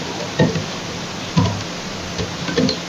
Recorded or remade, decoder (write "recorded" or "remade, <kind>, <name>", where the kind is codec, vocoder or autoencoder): recorded